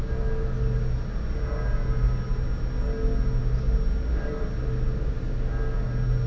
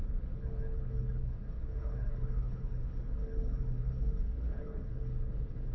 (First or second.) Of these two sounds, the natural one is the first